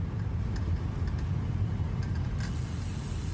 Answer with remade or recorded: recorded